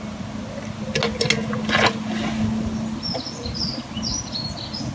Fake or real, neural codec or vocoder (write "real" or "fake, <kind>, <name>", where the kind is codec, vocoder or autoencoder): real